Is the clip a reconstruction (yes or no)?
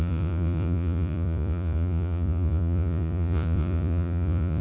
yes